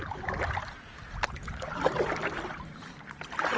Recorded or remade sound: recorded